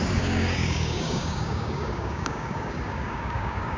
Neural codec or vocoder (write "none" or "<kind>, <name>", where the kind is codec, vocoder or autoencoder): codec, DAC